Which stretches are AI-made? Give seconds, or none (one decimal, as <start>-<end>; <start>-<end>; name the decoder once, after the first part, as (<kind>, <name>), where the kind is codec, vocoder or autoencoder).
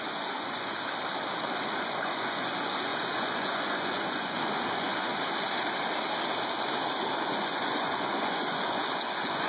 0.0-0.7 (vocoder, Vocos); 1.7-5.1; 7.3-9.5